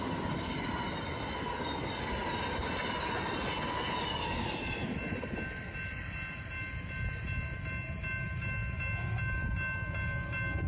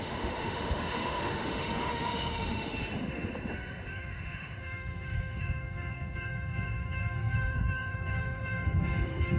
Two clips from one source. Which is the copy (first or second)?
second